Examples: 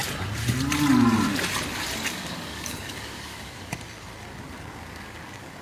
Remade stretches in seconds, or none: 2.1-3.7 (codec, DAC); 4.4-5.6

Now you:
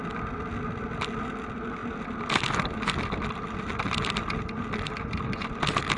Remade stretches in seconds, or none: none

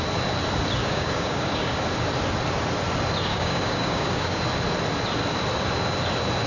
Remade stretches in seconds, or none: 0.8-1.8 (codec, DAC); 3.3-4.4